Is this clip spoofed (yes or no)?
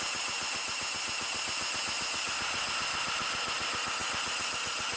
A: no